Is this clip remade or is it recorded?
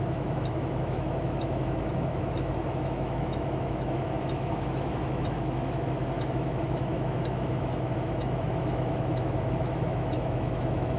remade